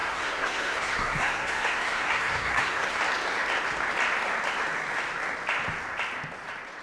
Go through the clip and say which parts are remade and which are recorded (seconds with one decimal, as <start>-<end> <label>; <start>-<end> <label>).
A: 0.0-3.0 remade; 3.0-6.8 recorded